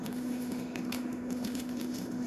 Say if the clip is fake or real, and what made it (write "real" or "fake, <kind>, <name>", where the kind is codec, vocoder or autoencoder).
fake, autoencoder, DAC-VAE